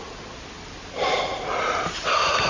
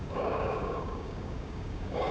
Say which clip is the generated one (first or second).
second